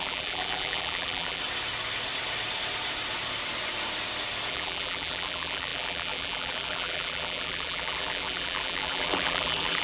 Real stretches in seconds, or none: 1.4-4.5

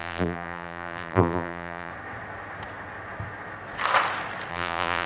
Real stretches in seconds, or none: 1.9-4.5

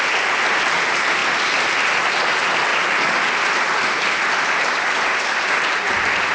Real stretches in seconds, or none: 0.0-2.7; 5.5-6.3